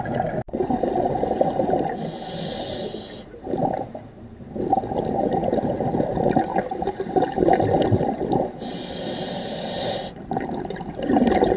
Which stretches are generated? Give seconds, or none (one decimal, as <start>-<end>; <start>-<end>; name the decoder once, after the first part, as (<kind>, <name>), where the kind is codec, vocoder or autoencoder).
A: none